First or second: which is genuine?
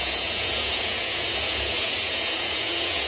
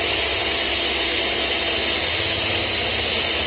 second